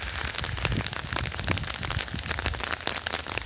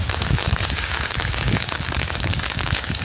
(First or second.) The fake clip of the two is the second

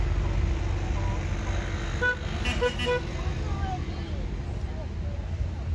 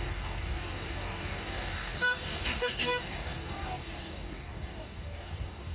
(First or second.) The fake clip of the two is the second